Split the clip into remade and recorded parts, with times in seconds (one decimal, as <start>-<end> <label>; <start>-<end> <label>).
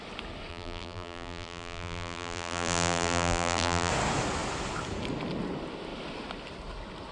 0.0-0.5 recorded; 0.5-3.9 remade; 3.9-7.1 recorded